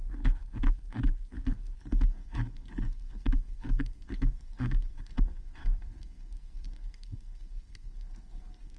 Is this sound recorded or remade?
remade